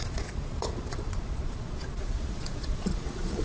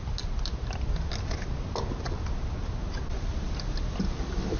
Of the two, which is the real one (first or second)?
second